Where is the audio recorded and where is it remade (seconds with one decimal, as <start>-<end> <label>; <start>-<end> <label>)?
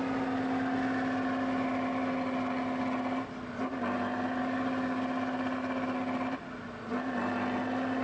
0.0-8.0 recorded